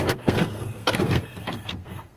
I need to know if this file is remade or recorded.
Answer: remade